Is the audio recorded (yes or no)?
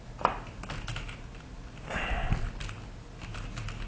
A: yes